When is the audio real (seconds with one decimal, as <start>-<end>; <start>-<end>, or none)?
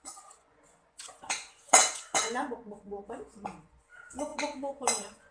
none